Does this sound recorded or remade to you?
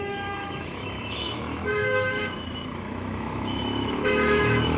remade